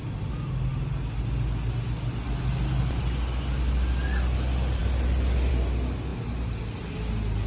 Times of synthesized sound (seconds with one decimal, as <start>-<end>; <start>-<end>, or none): none